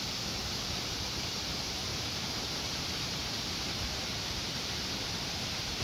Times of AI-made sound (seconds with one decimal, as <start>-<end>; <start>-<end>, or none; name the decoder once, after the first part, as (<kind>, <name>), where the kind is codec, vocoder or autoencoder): 0.4-1.3 (vocoder, BigVGAN v2); 1.9-5.8